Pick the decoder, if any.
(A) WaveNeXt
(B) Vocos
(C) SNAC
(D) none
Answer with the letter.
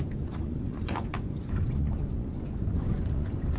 B